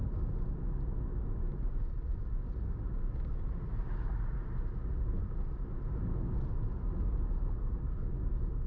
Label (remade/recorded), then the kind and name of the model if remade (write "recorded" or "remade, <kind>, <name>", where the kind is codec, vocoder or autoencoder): recorded